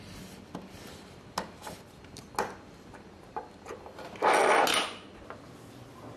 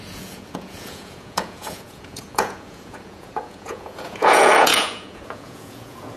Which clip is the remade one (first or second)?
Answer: second